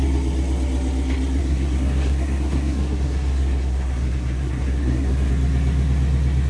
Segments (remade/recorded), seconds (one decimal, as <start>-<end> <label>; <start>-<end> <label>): 0.0-1.4 recorded; 1.4-5.3 remade; 5.3-6.5 recorded